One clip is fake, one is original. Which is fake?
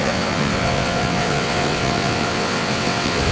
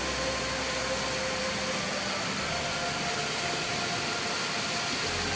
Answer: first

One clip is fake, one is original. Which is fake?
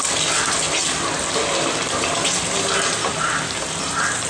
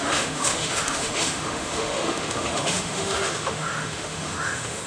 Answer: second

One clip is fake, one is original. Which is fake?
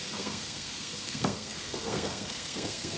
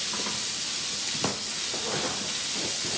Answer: first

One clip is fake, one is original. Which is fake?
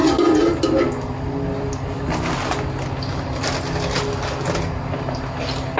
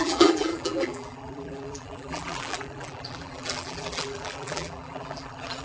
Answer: second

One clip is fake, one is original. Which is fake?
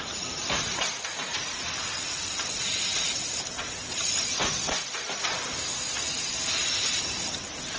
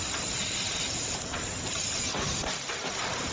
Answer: second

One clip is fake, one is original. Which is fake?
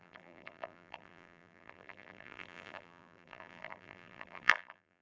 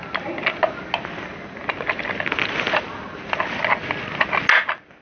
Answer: first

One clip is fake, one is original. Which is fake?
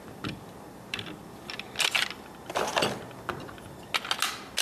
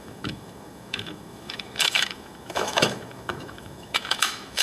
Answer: second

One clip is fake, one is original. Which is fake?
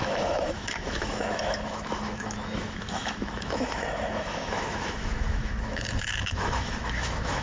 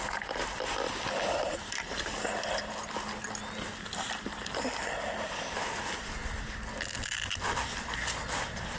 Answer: first